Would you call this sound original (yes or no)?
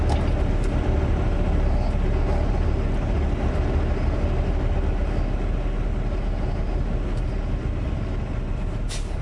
yes